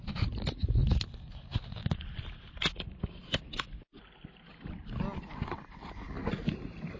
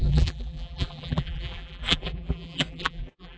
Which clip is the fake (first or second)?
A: second